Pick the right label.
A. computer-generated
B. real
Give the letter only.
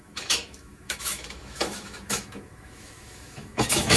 A